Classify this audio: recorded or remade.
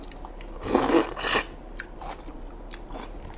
recorded